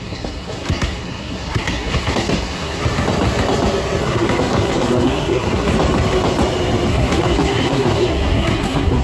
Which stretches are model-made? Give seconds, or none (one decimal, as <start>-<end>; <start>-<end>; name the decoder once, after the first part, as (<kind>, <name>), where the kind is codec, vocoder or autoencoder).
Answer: 0.0-2.8 (codec, SNAC); 4.0-5.7; 6.9-9.0

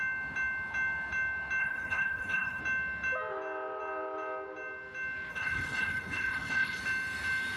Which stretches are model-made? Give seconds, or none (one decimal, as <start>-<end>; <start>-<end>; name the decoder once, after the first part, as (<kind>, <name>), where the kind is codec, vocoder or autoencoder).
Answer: 1.6-2.6 (codec, HILCodec); 5.3-6.8

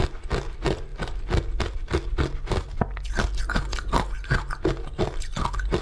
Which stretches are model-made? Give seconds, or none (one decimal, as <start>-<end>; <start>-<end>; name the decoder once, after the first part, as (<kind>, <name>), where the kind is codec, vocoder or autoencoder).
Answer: none

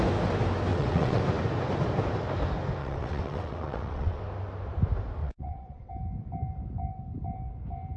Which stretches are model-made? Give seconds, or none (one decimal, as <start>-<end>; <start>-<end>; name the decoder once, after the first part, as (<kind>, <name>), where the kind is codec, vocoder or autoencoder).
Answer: 0.7-1.2 (vocoder, WaveNeXt); 2.8-4.2; 5.2-5.9

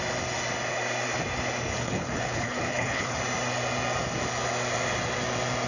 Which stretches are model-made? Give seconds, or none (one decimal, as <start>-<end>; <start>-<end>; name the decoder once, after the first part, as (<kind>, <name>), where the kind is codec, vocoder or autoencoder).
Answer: 1.7-3.2 (codec, HILCodec)

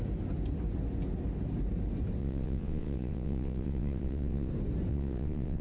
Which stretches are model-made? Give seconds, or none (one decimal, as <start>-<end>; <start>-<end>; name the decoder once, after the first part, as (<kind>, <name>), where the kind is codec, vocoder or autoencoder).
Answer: 2.2-4.5 (vocoder, WaveNeXt); 4.9-5.6